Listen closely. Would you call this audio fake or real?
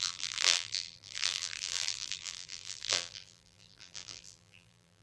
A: fake